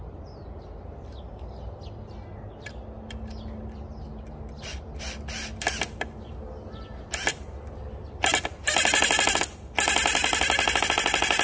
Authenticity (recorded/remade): recorded